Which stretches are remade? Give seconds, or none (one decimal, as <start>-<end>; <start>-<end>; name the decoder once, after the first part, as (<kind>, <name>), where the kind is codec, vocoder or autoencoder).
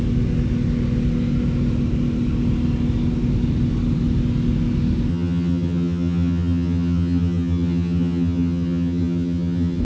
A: 5.1-9.8 (vocoder, HiFi-GAN)